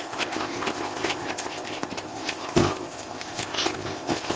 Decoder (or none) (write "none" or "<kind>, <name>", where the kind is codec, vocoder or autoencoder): codec, ZipCodec